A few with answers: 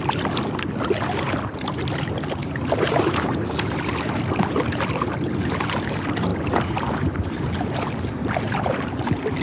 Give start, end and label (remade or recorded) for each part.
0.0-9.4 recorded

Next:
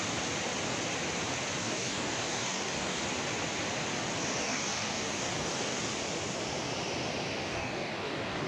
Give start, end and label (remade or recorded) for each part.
0.0-1.6 recorded; 1.6-3.0 remade; 3.0-4.4 recorded; 4.4-5.8 remade; 5.8-7.4 recorded; 7.4-8.5 remade